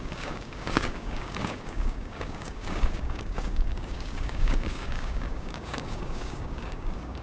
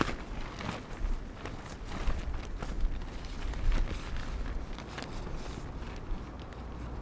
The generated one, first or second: first